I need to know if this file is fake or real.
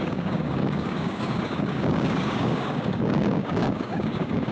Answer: fake